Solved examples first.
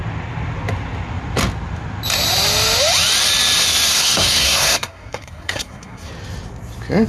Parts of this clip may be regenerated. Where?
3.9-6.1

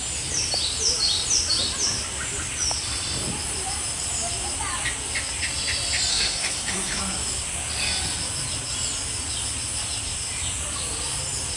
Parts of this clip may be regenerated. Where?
6.1-7.0